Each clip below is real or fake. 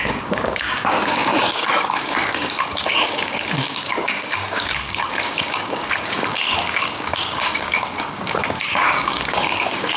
fake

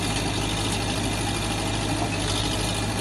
real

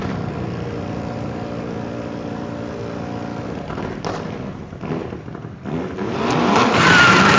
real